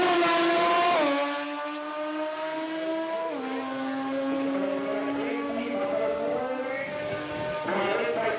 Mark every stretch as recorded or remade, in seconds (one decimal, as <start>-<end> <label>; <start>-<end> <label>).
0.0-5.3 recorded; 5.3-7.5 remade; 7.5-8.4 recorded